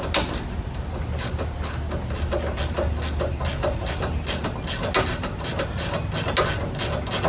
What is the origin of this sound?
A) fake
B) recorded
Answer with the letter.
B